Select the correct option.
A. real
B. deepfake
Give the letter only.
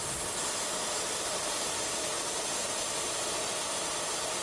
A